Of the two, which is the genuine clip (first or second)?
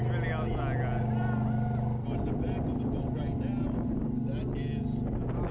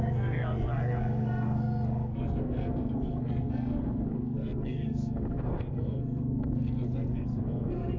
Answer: first